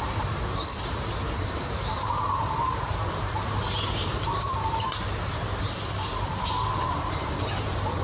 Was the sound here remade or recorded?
remade